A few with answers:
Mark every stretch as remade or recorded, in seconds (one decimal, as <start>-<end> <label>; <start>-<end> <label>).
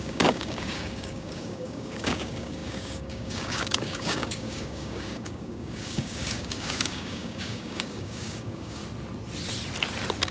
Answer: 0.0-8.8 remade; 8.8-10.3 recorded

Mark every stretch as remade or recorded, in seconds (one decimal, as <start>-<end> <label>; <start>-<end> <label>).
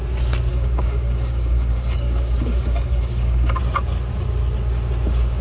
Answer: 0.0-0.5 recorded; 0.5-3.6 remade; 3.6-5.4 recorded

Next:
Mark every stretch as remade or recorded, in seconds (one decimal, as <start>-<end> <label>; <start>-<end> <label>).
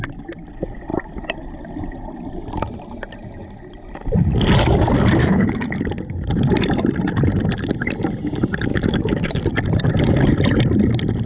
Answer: 0.0-5.2 recorded; 5.2-5.8 remade; 5.8-8.7 recorded; 8.7-9.3 remade; 9.3-11.3 recorded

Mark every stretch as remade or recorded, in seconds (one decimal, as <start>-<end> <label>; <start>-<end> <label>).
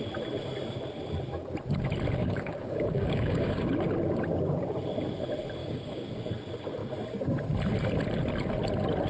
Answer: 0.0-2.2 recorded; 2.2-3.7 remade; 3.7-5.6 recorded; 5.6-6.3 remade; 6.3-9.1 recorded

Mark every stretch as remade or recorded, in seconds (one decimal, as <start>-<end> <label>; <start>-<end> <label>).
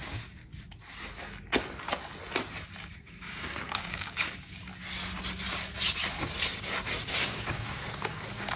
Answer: 0.0-0.4 remade; 0.4-2.9 recorded; 2.9-4.7 remade; 4.7-7.1 recorded; 7.1-8.6 remade